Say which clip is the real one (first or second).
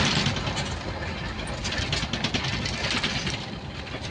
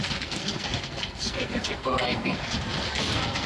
first